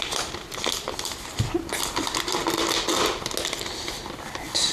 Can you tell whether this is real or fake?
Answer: real